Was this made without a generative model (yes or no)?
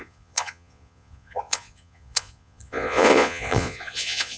no